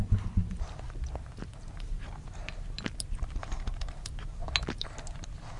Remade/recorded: recorded